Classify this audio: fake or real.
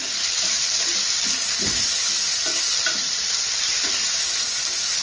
real